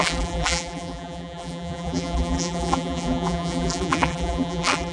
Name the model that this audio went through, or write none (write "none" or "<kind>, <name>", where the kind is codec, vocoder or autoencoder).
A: vocoder, BigVGAN v2